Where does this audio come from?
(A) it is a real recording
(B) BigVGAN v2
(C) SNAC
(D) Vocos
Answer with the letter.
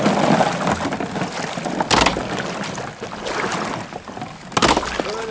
A